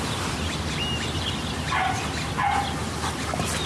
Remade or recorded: recorded